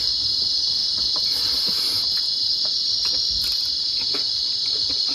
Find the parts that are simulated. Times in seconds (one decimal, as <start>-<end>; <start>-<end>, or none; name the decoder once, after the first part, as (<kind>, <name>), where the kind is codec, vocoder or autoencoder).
none